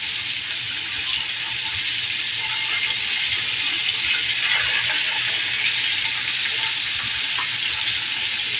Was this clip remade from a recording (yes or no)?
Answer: no